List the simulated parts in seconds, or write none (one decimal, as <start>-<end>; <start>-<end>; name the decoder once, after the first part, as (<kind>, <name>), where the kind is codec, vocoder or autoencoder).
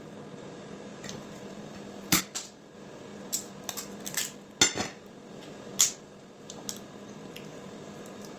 0.9-2.2 (vocoder, BigVGAN v2); 7.5-8.4